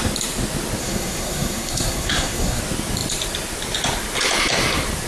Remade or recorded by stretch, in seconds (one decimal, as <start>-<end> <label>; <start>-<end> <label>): 0.0-0.8 recorded; 0.8-2.6 remade; 2.6-5.1 recorded